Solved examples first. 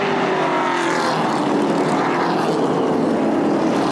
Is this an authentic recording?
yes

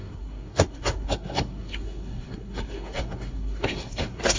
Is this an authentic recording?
no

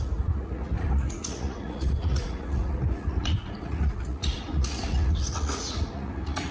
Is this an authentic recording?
no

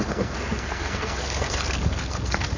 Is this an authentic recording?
no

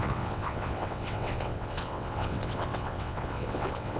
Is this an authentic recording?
no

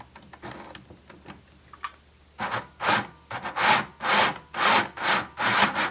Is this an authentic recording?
yes